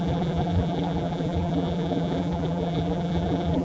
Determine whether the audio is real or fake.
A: fake